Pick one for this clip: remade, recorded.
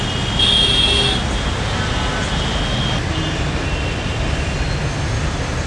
recorded